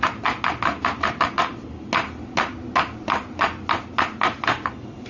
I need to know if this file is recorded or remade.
recorded